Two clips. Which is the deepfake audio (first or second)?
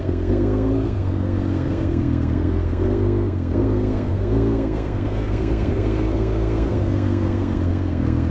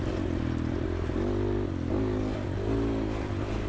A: first